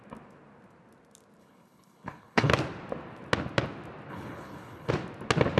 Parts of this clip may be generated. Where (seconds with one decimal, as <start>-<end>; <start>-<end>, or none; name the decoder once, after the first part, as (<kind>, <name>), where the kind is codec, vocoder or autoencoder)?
1.4-2.5 (codec, HILCodec); 4.1-4.9